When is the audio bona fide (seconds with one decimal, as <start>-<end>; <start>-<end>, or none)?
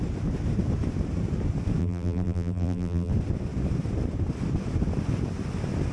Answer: 0.0-1.8; 3.1-5.9